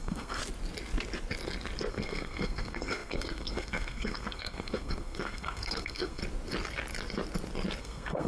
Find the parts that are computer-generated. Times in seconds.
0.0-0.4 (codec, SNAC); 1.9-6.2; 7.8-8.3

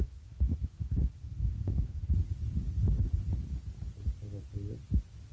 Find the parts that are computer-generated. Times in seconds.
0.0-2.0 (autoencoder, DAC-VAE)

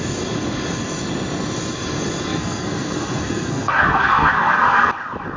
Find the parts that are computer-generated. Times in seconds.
2.3-4.9 (codec, SNAC)

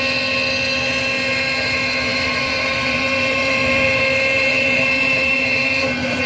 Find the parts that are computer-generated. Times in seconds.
2.1-6.3 (vocoder, BigVGAN v2)

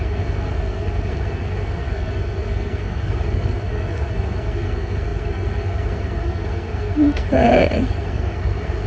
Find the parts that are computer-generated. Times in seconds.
0.0-8.9 (codec, SNAC)

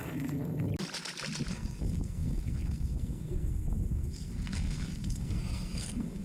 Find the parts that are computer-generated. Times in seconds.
0.0-0.7 (codec, SNAC); 1.5-6.2

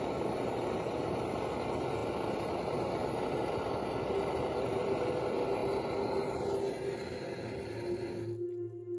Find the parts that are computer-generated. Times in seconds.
none

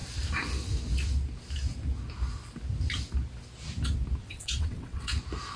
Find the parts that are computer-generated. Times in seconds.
4.2-5.1 (vocoder, WaveNeXt)